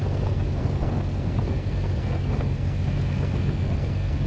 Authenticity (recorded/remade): remade